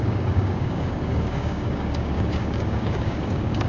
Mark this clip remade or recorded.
remade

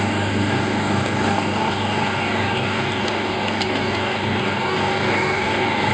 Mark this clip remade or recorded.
remade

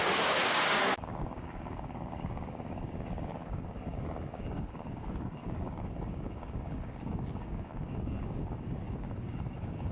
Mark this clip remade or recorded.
remade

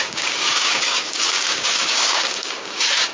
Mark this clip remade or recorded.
remade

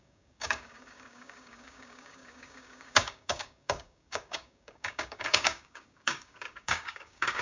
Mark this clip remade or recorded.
remade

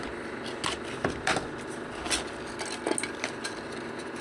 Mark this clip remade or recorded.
recorded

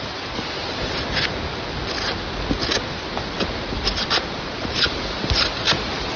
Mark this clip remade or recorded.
recorded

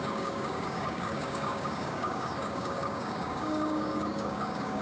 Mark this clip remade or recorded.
remade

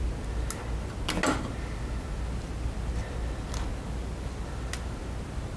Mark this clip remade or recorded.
recorded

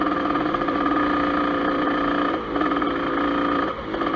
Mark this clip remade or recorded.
recorded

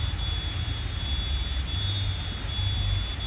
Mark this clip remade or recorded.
recorded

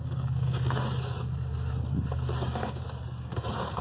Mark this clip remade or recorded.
remade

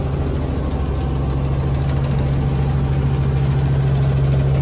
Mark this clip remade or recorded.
recorded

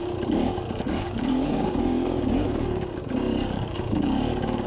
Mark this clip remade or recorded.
remade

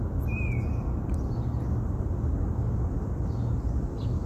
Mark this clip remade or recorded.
recorded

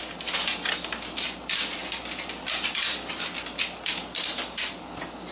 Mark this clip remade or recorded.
recorded